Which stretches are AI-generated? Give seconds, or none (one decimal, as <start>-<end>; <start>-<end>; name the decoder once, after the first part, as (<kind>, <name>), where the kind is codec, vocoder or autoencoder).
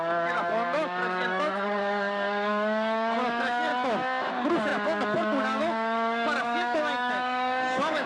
0.0-3.7 (codec, DAC); 4.3-8.1